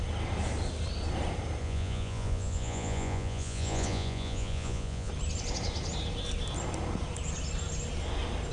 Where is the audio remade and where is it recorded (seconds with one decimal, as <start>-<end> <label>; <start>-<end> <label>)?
0.0-1.6 recorded; 1.6-5.1 remade; 5.1-8.5 recorded